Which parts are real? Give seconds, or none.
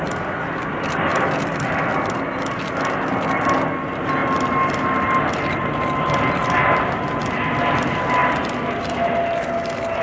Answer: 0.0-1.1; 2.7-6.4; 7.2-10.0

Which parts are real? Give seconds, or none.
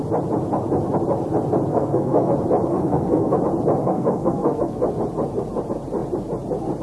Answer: 0.0-1.7; 2.3-2.7; 3.4-3.8; 4.8-6.8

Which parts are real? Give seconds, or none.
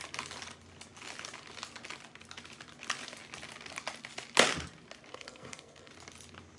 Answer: 0.0-5.1; 5.9-6.6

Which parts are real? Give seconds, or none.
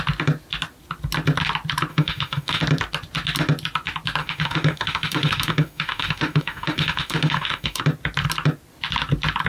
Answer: 0.0-1.9; 2.6-4.2; 7.8-9.5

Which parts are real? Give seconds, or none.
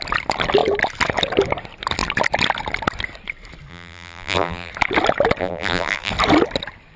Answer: 0.0-3.7; 4.7-5.4; 6.1-7.0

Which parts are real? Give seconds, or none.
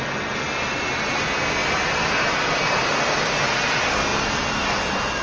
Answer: 0.0-1.6; 2.9-5.2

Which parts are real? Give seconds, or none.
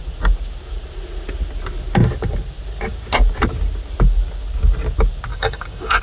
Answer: 0.0-5.3